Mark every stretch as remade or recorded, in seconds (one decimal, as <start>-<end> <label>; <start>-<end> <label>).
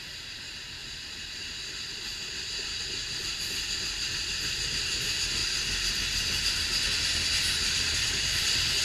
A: 0.0-0.8 recorded; 0.8-1.5 remade; 1.5-8.8 recorded